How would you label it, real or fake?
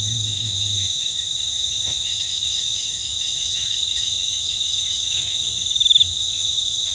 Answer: fake